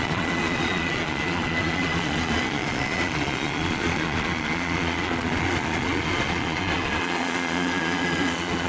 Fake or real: fake